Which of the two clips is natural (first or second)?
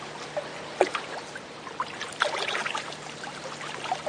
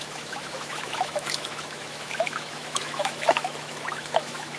first